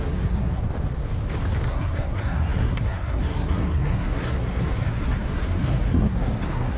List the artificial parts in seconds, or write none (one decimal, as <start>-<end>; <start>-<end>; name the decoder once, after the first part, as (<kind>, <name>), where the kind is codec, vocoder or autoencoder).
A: 0.0-0.6 (codec, SNAC); 1.7-6.8

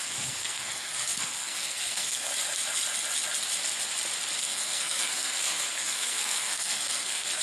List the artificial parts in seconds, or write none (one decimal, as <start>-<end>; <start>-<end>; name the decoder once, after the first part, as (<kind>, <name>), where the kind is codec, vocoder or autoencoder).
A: 0.0-2.3 (codec, SNAC); 4.4-7.4

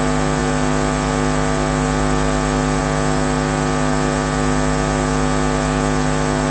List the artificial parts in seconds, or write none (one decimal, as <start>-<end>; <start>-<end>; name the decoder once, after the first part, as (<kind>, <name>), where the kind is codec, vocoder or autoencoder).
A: none